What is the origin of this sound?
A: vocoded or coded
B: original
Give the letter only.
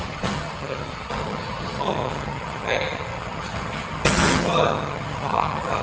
A